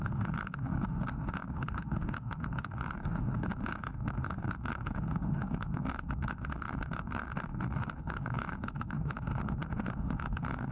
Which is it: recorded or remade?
remade